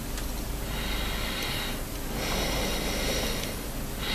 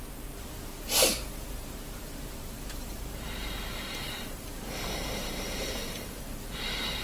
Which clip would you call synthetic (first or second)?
second